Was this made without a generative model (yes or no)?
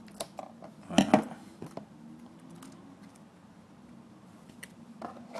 yes